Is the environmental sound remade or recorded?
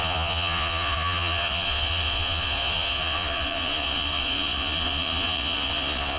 remade